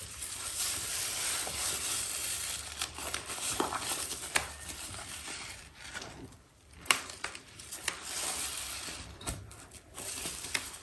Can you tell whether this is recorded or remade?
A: remade